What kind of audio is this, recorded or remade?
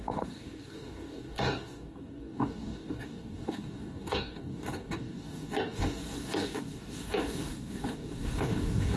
remade